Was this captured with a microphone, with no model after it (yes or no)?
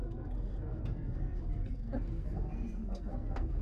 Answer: no